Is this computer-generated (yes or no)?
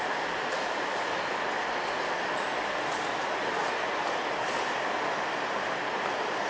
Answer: no